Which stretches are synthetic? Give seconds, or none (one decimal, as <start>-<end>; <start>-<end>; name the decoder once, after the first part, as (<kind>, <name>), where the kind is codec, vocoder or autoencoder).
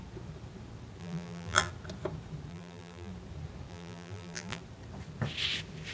1.0-1.7 (vocoder, BigVGAN v2); 2.5-3.1; 3.7-4.6